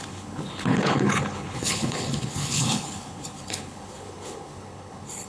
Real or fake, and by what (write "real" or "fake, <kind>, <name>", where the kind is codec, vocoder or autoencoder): fake, codec, HILCodec